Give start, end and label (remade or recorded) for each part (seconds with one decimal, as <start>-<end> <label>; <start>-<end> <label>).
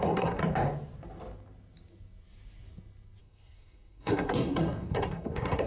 0.0-0.4 remade; 0.4-3.2 recorded; 3.2-5.7 remade